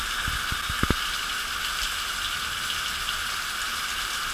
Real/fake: real